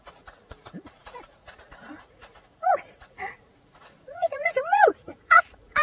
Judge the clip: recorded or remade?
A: remade